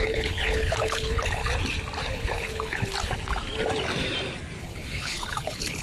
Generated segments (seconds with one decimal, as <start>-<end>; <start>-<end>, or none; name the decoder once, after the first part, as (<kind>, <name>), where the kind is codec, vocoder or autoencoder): 0.0-1.4 (codec, HILCodec); 2.1-2.9; 4.6-5.8